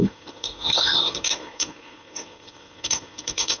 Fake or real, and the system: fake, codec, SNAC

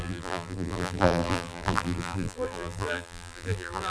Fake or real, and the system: fake, vocoder, BigVGAN v2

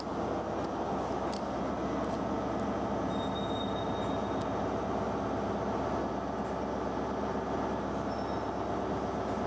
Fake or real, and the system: real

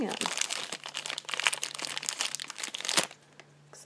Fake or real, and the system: real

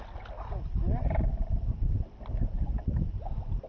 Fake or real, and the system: real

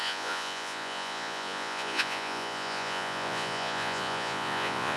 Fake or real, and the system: fake, vocoder, Vocos